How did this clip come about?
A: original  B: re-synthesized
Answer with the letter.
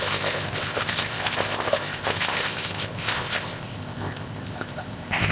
B